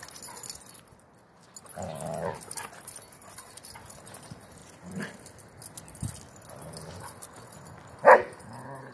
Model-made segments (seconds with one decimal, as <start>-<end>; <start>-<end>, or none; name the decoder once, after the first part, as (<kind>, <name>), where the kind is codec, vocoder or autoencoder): 4.6-5.2 (vocoder, BigVGAN v2)